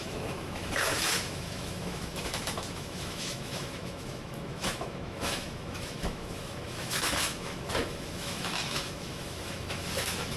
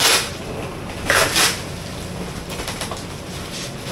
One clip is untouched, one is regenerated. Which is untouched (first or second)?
second